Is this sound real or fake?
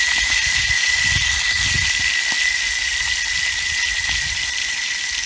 real